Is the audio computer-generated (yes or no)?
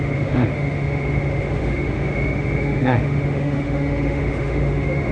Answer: yes